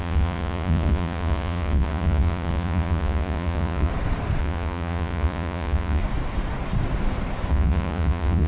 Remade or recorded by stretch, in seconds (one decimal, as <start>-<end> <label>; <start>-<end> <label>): 0.0-3.9 remade; 3.9-4.4 recorded; 4.4-6.0 remade; 6.0-7.5 recorded; 7.5-8.5 remade